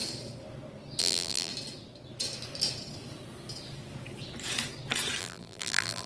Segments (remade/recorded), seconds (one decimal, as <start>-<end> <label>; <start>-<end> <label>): 0.0-1.0 recorded; 1.0-1.5 remade; 1.5-5.2 recorded; 5.2-6.1 remade